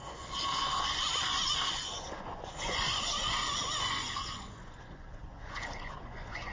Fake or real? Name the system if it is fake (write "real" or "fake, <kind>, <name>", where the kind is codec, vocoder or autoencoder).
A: fake, vocoder, Vocos